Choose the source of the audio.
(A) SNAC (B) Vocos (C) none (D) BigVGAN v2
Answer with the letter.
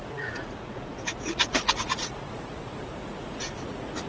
B